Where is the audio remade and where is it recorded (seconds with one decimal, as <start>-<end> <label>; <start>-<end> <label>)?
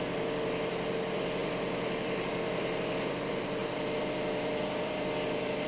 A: 0.0-5.7 remade